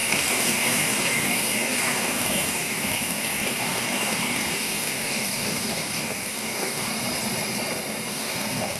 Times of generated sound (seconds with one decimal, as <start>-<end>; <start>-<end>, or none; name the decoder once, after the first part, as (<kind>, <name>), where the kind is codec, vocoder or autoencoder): 0.0-6.9 (codec, DAC); 8.1-8.8